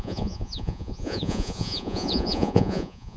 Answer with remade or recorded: remade